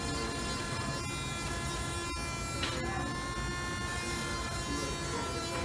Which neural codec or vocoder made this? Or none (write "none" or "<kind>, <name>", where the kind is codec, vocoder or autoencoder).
none